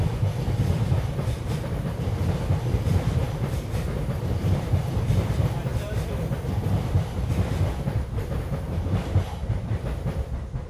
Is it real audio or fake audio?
fake